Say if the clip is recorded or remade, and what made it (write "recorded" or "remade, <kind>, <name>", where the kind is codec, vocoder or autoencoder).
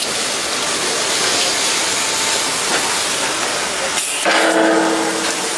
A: recorded